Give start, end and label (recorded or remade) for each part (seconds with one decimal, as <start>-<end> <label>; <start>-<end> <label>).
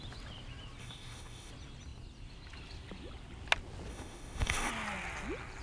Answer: 0.0-0.8 recorded; 0.8-1.5 remade; 1.5-3.9 recorded; 3.9-4.7 remade; 4.7-5.6 recorded